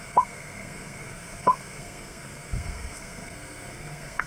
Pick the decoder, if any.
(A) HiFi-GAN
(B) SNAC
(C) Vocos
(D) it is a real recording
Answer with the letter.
B